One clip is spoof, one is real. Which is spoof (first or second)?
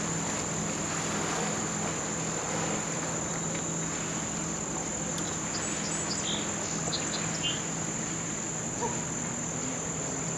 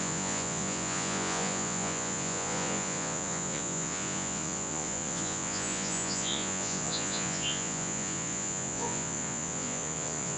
second